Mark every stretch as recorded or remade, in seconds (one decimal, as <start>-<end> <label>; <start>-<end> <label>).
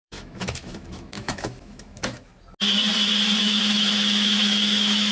0.0-2.3 remade; 2.3-3.4 recorded; 3.4-5.1 remade